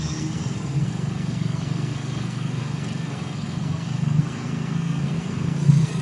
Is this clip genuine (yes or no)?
no